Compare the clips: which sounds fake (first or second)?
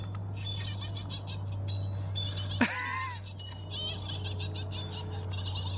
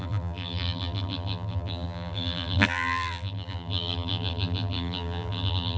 second